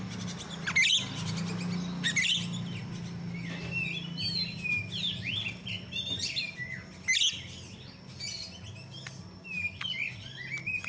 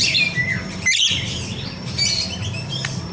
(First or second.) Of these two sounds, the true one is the first